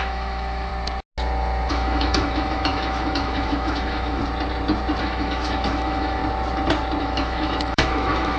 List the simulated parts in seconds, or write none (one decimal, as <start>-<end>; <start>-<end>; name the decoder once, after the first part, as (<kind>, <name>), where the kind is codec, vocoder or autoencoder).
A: 0.0-0.7 (autoencoder, DAC-VAE); 1.7-4.2; 5.0-6.2; 7.0-8.4